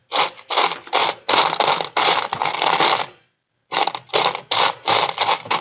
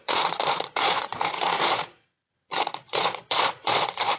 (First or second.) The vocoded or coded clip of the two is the second